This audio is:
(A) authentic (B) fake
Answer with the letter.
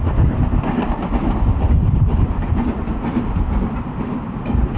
A